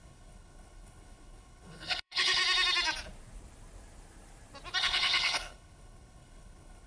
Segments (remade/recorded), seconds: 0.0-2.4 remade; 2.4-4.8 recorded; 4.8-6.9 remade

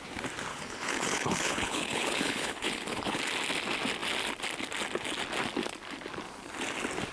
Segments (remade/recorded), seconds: 0.0-0.5 recorded; 0.5-3.2 remade; 3.2-7.1 recorded

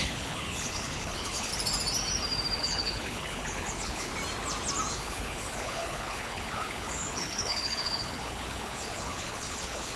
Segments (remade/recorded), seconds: 0.0-1.5 remade; 1.5-2.6 recorded; 2.6-4.1 remade; 4.1-4.9 recorded; 4.9-10.0 remade

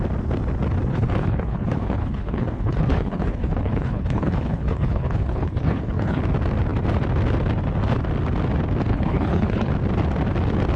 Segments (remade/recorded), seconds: 0.0-0.9 recorded; 0.9-6.2 remade; 6.2-8.9 recorded; 8.9-9.7 remade; 9.7-10.8 recorded

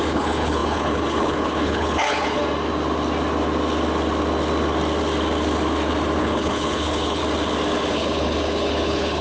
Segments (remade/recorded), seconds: 0.0-2.4 remade; 2.4-6.2 recorded; 6.2-7.2 remade; 7.2-7.9 recorded; 7.9-9.2 remade

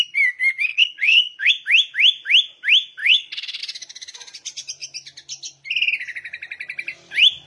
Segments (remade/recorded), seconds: 0.0-0.7 recorded; 0.7-1.5 remade; 1.5-3.0 recorded; 3.0-3.6 remade; 3.6-7.5 recorded

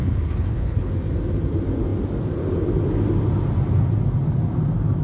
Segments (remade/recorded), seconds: 0.0-0.9 remade; 0.9-5.0 recorded

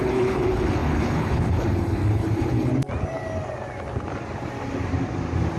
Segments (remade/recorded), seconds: 0.0-2.7 remade; 2.7-5.6 recorded